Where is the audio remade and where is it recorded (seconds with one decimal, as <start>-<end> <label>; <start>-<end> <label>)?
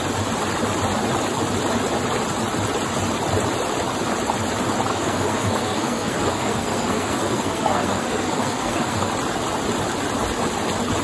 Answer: 0.0-4.9 recorded; 4.9-9.1 remade; 9.1-11.0 recorded